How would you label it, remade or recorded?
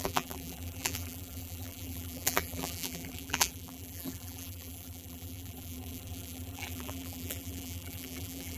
remade